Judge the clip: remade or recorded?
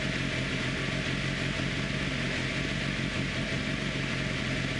recorded